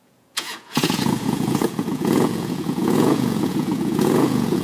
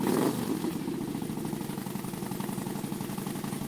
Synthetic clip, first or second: first